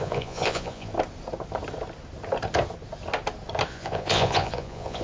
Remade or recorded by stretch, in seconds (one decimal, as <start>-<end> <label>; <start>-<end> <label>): 0.0-0.9 remade; 0.9-3.7 recorded; 3.7-5.0 remade